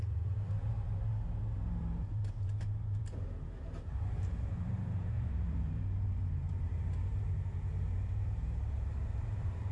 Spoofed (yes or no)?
yes